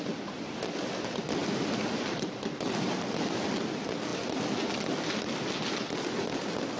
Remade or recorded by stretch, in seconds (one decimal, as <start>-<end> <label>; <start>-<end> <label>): 0.0-6.8 recorded